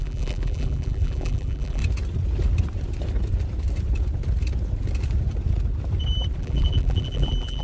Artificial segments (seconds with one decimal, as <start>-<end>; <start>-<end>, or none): 0.0-1.8; 6.4-7.6